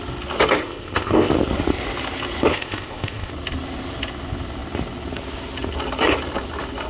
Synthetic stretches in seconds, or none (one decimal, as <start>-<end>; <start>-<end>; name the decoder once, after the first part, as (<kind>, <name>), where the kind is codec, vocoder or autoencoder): 0.6-1.3 (codec, ZipCodec); 2.5-3.3